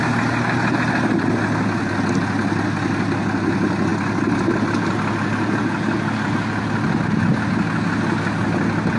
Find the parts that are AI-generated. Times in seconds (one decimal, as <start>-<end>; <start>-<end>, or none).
none